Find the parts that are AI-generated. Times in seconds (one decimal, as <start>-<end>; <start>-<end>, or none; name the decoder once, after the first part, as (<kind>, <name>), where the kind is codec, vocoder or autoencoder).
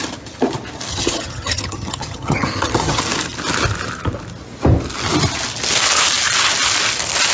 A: 0.9-3.0 (vocoder, HiFi-GAN)